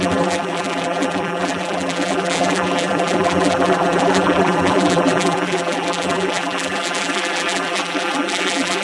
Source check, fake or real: fake